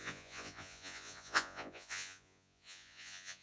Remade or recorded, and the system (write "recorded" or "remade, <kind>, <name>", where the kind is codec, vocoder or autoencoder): remade, vocoder, Vocos